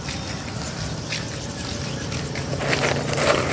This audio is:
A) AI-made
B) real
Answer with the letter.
A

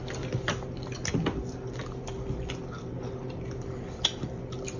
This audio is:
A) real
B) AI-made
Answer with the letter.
A